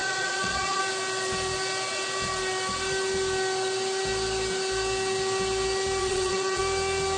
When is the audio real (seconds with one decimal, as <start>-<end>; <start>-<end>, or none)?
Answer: 0.8-6.0; 6.6-7.2